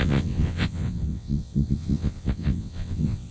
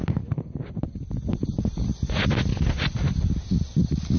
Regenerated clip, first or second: first